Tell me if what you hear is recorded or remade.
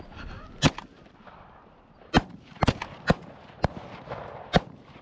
recorded